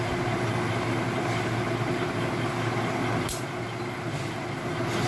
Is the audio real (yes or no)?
yes